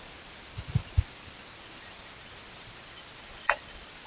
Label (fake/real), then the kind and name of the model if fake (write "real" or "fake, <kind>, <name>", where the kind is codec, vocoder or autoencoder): real